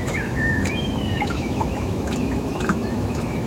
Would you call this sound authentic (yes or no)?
no